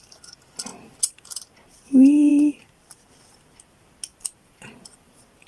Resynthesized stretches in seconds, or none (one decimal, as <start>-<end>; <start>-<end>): 0.7-1.4; 4.1-5.1